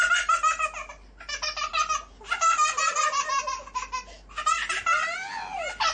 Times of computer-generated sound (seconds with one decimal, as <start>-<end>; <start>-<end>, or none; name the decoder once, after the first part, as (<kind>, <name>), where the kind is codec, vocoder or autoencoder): none